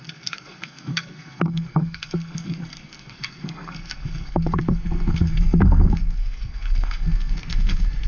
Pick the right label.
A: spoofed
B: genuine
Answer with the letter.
A